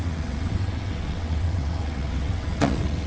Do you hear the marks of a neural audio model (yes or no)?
yes